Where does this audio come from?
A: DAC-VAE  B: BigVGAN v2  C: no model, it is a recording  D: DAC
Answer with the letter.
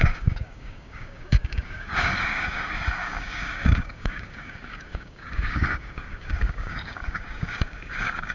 D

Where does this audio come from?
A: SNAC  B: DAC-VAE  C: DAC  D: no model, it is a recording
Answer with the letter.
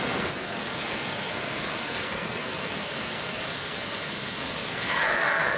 A